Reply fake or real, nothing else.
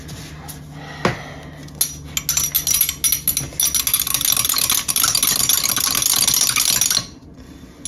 real